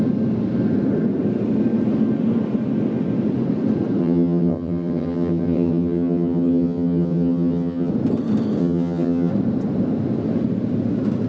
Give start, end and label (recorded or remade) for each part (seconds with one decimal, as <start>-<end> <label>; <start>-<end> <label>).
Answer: 0.0-4.0 recorded; 4.0-7.9 remade; 7.9-8.6 recorded; 8.6-9.3 remade; 9.3-11.3 recorded